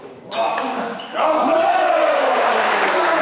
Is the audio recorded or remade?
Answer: remade